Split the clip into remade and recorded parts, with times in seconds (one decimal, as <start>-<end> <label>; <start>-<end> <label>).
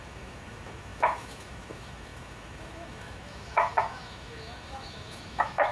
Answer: 0.0-5.7 remade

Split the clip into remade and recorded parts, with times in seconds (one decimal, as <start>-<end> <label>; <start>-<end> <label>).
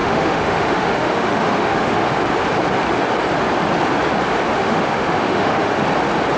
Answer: 0.0-2.2 remade; 2.2-4.5 recorded; 4.5-5.8 remade; 5.8-6.4 recorded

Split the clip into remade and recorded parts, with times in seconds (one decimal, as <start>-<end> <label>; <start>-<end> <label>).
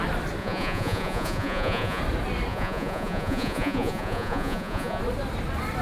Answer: 0.0-0.4 recorded; 0.4-2.0 remade; 2.0-2.5 recorded; 2.5-5.0 remade; 5.0-5.8 recorded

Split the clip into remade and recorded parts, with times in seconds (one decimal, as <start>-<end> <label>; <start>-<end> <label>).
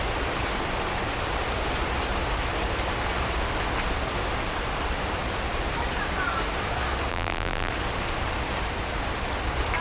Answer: 0.0-7.1 recorded; 7.1-7.7 remade; 7.7-9.8 recorded